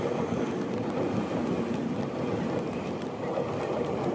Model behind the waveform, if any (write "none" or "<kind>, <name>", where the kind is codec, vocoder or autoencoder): none